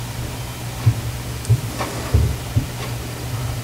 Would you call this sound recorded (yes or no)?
yes